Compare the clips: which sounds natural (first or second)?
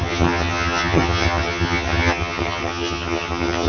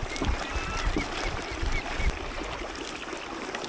second